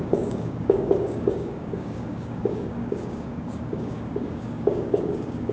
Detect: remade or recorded remade